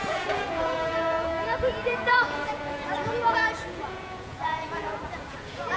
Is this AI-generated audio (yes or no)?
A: yes